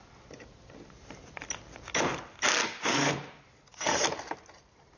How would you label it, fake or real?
real